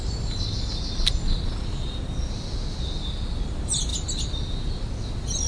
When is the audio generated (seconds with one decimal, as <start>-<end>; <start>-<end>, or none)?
none